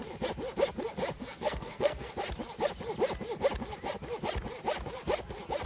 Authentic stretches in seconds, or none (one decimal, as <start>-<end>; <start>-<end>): 0.0-1.2; 2.1-5.7